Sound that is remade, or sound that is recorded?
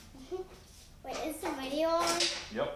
recorded